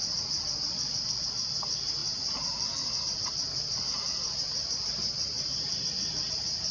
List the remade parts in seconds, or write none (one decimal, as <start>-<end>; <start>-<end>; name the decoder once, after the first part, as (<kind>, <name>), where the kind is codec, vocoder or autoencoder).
none